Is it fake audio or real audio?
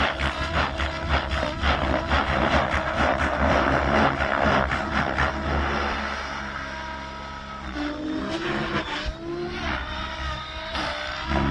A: real